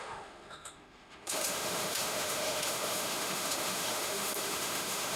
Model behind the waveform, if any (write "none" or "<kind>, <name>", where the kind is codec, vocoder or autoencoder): autoencoder, DAC-VAE